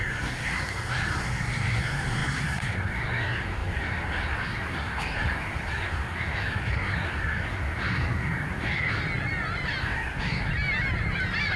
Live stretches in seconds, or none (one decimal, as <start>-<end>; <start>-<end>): 9.0-9.8; 10.5-11.6

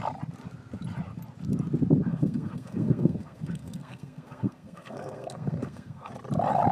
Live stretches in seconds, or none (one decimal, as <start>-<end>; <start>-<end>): 0.0-2.1; 6.1-6.7

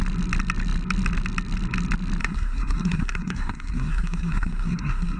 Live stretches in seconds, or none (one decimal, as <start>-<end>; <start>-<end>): 0.0-2.2

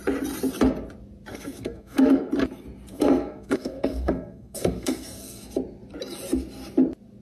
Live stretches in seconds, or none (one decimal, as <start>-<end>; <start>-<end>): 0.0-1.3; 2.3-2.9; 5.4-7.2